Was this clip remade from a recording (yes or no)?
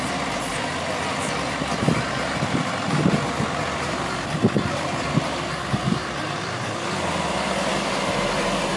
yes